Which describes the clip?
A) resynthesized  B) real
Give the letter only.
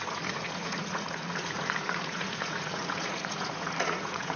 A